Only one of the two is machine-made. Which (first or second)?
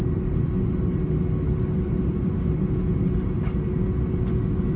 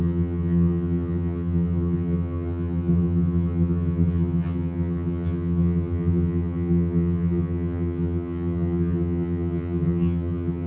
second